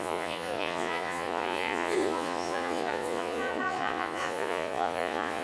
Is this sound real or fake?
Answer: fake